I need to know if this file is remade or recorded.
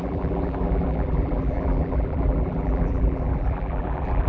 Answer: remade